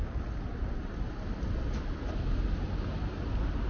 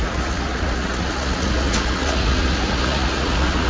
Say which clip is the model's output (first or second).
second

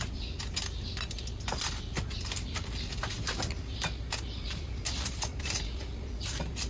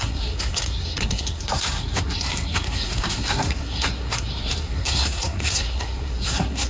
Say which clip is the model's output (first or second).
second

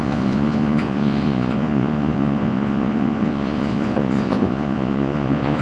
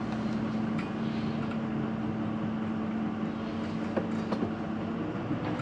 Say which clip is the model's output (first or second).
first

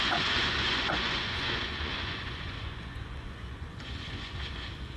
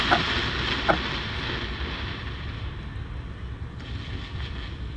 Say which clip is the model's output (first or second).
first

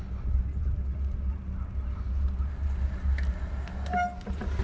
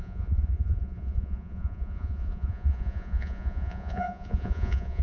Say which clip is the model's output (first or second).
second